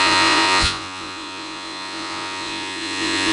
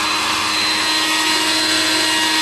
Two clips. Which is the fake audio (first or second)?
first